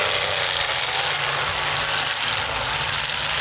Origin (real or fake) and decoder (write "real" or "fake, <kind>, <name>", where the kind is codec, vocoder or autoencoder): real